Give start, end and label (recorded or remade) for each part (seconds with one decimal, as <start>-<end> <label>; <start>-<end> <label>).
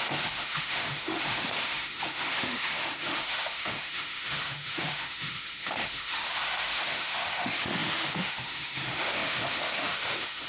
0.0-10.5 remade